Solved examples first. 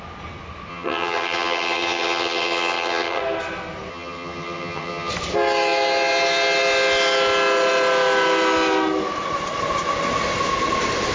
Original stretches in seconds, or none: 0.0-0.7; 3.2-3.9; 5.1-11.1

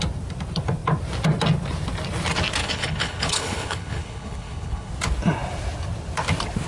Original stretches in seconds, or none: 0.0-2.6; 4.9-6.7

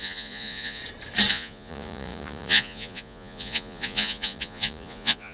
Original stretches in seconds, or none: 0.8-1.3

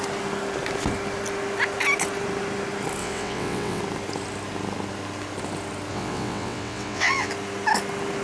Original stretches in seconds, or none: 0.0-3.0; 3.8-5.9; 7.3-8.2